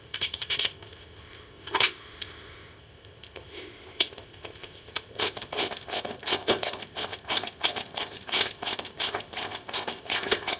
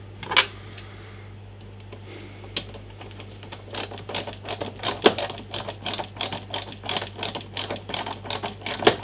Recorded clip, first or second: second